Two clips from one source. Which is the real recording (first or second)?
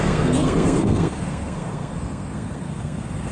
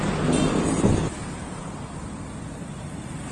second